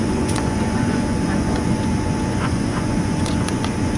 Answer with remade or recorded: remade